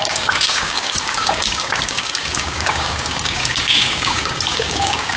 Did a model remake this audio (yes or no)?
yes